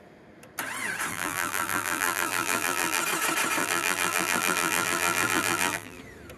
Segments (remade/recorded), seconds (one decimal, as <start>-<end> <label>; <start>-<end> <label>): 0.0-1.1 recorded; 1.1-3.0 remade; 3.0-3.6 recorded; 3.6-6.0 remade; 6.0-6.4 recorded